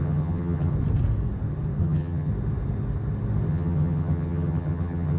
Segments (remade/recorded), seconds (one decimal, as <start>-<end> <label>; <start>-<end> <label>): 0.0-0.7 remade; 0.7-1.8 recorded; 1.8-2.3 remade; 2.3-3.5 recorded; 3.5-5.2 remade